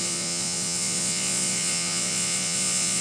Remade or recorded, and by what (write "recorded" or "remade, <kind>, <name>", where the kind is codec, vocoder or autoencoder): remade, vocoder, Vocos